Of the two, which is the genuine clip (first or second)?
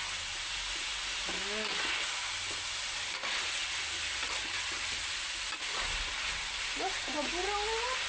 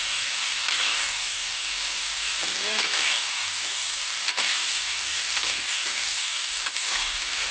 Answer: first